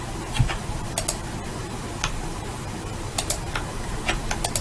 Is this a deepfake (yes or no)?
no